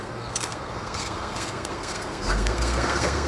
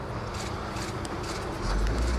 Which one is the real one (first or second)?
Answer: second